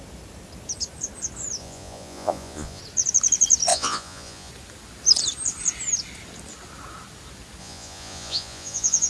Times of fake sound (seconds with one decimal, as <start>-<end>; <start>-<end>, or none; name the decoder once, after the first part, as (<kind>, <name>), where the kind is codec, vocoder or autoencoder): 1.6-2.8 (vocoder, Vocos); 3.7-4.5; 7.6-9.1